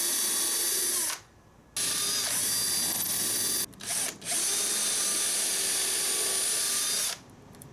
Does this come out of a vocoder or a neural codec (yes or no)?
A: no